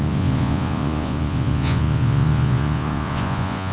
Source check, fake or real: fake